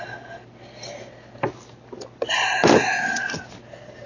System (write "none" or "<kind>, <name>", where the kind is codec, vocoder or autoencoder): none